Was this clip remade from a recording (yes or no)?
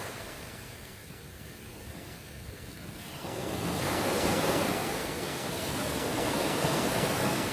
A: yes